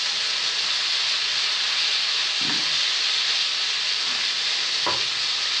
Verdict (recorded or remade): recorded